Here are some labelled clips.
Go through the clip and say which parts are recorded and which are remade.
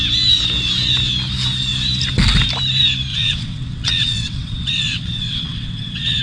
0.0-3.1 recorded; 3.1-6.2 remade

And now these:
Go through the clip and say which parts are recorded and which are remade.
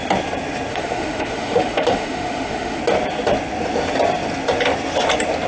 0.0-0.7 recorded; 0.7-2.8 remade; 2.8-5.5 recorded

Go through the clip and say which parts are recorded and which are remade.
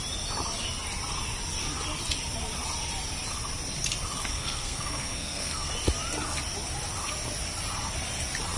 0.0-4.3 recorded; 4.3-5.7 remade; 5.7-8.6 recorded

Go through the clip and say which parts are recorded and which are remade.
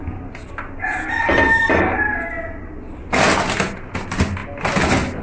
0.0-5.2 recorded